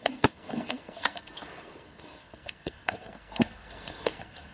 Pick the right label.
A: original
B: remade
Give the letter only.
B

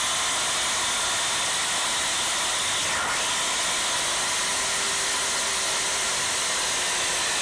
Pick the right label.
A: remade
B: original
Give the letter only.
B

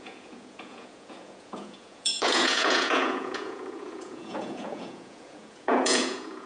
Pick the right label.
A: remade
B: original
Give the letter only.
A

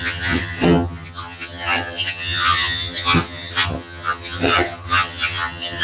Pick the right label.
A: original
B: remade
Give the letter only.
B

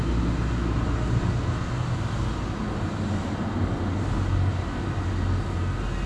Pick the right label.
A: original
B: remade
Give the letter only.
A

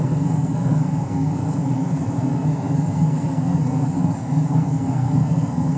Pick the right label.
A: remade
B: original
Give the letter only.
A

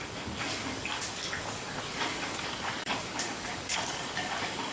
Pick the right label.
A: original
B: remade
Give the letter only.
B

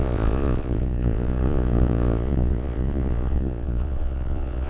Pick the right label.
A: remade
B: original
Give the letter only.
A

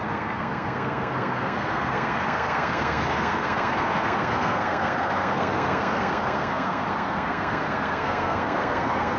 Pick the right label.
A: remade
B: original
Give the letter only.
A